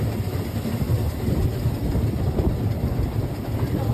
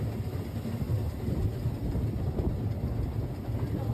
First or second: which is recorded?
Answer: second